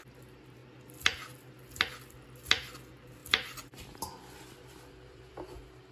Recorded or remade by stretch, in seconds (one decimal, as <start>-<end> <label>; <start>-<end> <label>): 0.0-3.2 recorded; 3.2-5.3 remade; 5.3-5.9 recorded